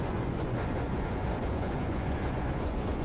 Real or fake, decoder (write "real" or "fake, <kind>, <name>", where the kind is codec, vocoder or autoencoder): fake, vocoder, Vocos